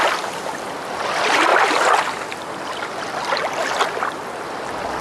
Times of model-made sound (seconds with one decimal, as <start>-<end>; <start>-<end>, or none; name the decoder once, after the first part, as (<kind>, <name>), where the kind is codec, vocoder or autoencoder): none